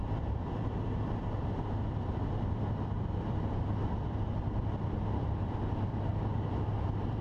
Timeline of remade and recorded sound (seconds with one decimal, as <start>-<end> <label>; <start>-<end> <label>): 0.0-7.2 remade